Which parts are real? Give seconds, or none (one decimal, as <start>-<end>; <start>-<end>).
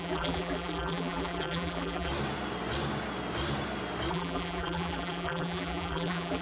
2.1-4.1